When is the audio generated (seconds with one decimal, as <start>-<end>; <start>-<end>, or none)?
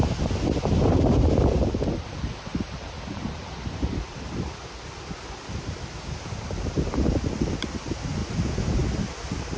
0.0-8.2